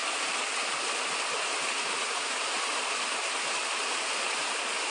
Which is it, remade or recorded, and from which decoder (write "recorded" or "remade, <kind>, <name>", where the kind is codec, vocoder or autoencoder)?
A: recorded